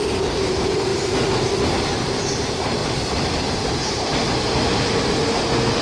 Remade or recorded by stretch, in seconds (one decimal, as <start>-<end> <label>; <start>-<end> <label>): 0.0-0.9 remade; 0.9-1.8 recorded; 1.8-4.1 remade; 4.1-5.8 recorded